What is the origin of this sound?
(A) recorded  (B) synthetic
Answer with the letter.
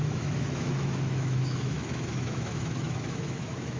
B